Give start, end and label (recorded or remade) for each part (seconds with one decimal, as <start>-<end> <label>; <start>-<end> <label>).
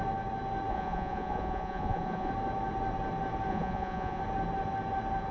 0.0-0.7 recorded; 0.7-2.3 remade; 2.3-3.5 recorded; 3.5-4.2 remade; 4.2-5.3 recorded